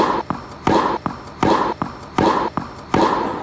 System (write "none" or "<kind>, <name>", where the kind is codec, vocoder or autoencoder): none